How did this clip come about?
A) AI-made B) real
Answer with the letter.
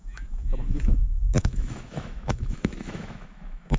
A